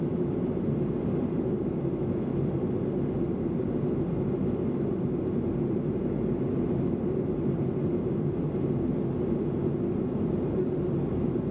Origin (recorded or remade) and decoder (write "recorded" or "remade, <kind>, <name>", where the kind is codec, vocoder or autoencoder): recorded